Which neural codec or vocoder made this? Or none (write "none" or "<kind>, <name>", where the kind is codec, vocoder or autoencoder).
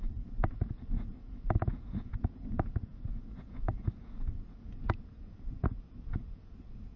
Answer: vocoder, Vocos